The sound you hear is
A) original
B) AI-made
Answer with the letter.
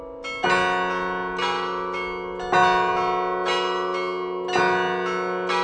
A